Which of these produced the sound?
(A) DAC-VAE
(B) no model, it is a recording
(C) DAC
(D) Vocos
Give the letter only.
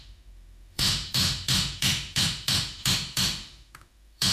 A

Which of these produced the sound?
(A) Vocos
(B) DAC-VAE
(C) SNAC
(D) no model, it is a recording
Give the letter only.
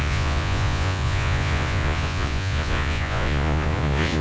A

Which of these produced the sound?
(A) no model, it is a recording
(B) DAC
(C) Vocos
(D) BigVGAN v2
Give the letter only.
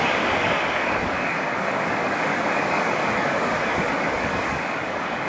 B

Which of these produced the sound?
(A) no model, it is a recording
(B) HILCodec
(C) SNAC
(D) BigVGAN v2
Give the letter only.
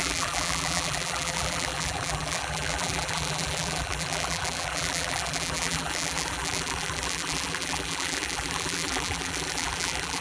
D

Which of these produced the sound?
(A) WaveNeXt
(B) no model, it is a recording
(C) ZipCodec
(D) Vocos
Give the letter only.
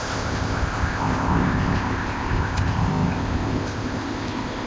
C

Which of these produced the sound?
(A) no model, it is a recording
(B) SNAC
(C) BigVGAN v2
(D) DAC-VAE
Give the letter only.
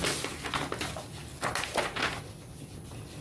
A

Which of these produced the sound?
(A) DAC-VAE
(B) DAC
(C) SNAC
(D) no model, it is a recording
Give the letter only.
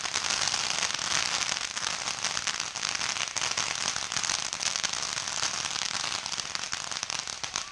D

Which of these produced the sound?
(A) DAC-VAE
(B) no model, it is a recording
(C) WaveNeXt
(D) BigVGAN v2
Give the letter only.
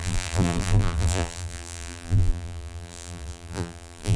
D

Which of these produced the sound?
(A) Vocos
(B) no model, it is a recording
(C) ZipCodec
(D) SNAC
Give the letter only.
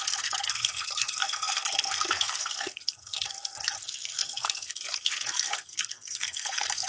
D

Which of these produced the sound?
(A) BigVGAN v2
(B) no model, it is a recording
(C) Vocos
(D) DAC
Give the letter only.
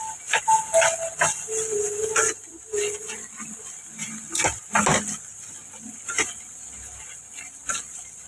B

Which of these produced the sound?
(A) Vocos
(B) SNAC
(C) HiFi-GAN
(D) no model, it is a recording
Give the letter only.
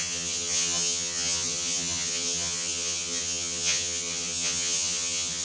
C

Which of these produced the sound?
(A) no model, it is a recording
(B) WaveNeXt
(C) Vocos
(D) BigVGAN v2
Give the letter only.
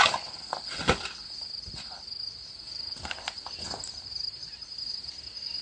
A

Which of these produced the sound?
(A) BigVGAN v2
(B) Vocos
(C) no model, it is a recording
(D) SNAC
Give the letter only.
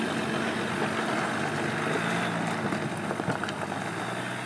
C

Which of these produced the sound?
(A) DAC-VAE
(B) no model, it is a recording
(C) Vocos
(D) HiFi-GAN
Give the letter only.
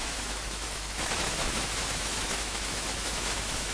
A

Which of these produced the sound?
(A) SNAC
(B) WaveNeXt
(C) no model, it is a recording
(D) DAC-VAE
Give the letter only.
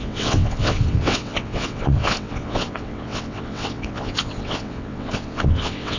B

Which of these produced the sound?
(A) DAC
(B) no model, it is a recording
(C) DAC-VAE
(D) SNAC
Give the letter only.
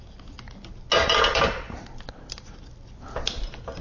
B